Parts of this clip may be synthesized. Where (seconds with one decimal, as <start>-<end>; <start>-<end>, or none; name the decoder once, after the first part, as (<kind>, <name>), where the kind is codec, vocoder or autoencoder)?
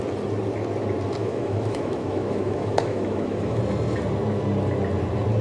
1.2-3.6 (autoencoder, DAC-VAE)